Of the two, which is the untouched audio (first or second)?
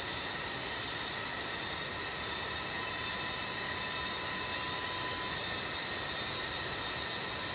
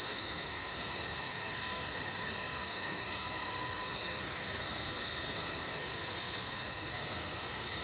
first